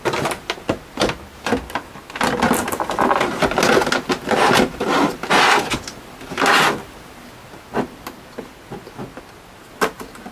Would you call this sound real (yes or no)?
yes